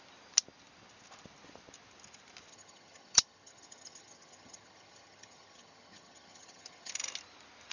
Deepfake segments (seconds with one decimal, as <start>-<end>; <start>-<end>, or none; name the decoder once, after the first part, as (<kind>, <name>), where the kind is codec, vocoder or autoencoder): 2.5-6.9 (vocoder, HiFi-GAN)